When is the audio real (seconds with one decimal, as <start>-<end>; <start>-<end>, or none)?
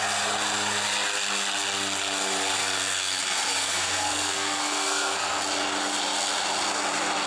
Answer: 0.0-2.6; 3.2-3.6; 5.4-7.3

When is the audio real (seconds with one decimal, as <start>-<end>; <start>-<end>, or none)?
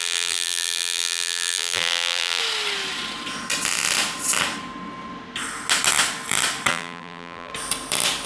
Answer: 2.4-6.7; 7.5-8.3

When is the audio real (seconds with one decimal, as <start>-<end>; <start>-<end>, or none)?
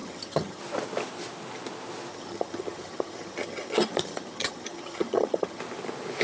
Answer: 0.6-2.1; 5.6-6.2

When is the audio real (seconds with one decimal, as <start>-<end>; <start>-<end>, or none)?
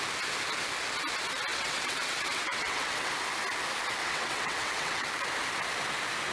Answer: 0.0-1.5; 3.1-4.0; 5.1-6.3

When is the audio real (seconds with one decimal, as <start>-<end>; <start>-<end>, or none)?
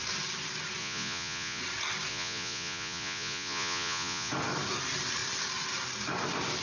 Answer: 0.0-0.8; 1.6-2.1; 4.3-6.6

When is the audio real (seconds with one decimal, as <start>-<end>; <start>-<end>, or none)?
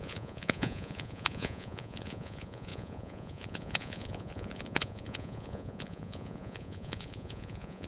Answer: none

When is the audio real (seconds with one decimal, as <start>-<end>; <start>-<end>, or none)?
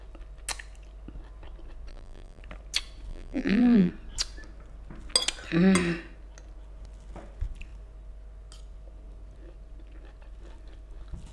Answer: 0.0-1.9; 2.4-3.1; 3.9-11.3